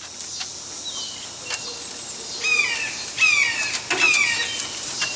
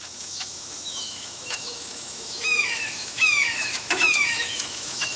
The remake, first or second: second